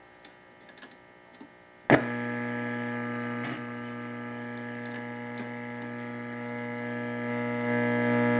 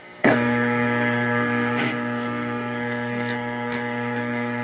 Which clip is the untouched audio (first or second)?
first